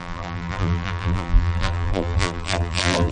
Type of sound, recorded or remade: remade